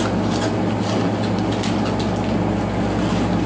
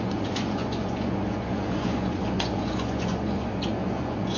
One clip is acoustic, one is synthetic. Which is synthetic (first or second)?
second